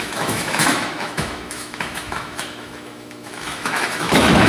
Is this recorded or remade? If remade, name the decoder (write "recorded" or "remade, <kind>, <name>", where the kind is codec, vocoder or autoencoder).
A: remade, autoencoder, DAC-VAE